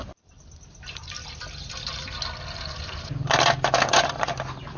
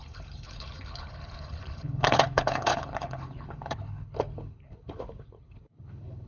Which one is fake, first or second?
second